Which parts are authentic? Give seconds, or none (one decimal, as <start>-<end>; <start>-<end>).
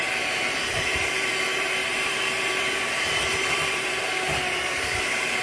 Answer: none